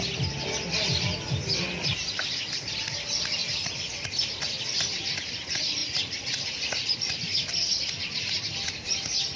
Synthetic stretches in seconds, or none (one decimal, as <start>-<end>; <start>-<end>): none

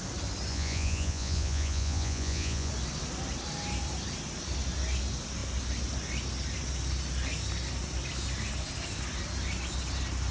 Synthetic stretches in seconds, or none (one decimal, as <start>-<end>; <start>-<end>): 0.5-2.7

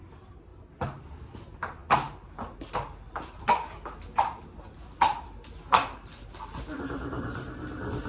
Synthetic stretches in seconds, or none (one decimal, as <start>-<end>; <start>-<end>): none

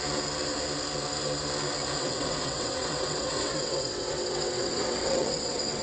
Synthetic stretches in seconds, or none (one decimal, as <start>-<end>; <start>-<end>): 2.0-5.8